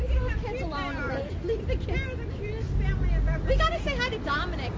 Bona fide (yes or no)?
yes